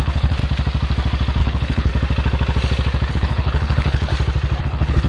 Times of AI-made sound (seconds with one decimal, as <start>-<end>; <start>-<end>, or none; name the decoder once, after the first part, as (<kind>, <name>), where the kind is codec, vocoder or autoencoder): 0.0-0.4 (codec, HILCodec); 1.4-1.9; 3.1-4.1; 4.6-5.1